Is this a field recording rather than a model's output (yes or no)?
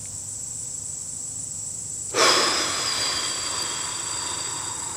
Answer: yes